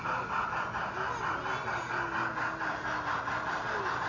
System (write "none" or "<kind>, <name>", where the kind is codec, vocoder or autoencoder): none